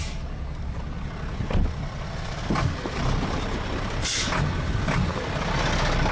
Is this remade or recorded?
recorded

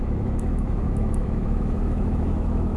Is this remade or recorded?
remade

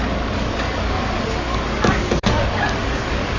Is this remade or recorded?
remade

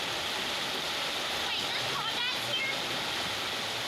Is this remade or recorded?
recorded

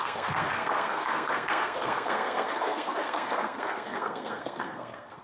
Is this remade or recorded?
remade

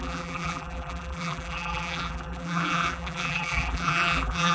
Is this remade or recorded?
remade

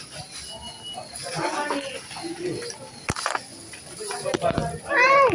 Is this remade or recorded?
recorded